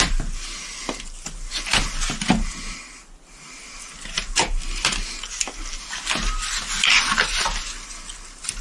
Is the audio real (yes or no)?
yes